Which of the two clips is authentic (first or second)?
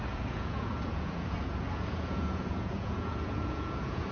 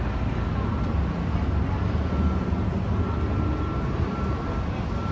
second